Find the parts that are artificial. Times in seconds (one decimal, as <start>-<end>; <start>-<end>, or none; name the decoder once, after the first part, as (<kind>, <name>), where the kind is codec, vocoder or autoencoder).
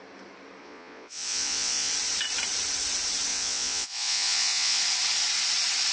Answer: 0.6-1.9 (vocoder, Vocos); 3.3-4.8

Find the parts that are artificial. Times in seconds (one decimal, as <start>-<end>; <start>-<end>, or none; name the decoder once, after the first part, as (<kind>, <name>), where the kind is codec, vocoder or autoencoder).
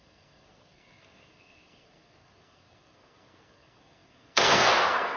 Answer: 0.0-5.2 (codec, SNAC)